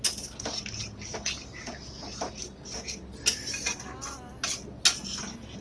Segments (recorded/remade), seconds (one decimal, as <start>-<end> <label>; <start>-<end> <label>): 0.0-5.6 recorded